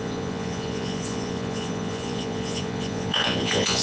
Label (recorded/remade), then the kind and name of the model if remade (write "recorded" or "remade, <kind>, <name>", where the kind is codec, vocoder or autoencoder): remade, vocoder, Vocos